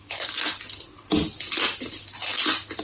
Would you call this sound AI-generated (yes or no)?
no